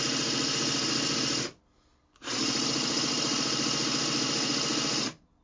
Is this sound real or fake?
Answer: real